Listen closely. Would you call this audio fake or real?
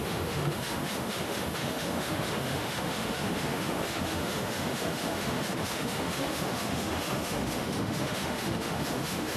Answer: fake